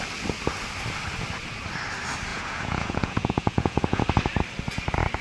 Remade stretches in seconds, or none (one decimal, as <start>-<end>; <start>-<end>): 2.3-4.0